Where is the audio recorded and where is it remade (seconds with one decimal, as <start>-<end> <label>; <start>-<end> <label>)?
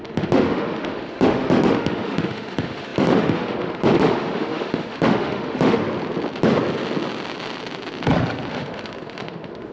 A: 0.0-5.8 remade; 5.8-8.5 recorded; 8.5-9.7 remade